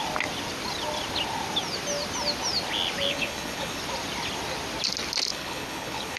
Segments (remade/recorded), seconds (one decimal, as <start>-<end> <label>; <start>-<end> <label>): 0.0-3.1 recorded; 3.1-3.8 remade; 3.8-5.3 recorded; 5.3-6.2 remade